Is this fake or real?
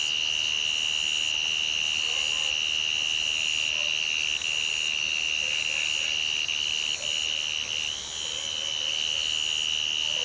real